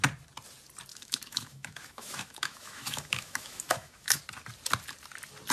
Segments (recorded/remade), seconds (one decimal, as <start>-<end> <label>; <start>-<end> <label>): 0.0-0.9 recorded; 0.9-4.2 remade; 4.2-5.5 recorded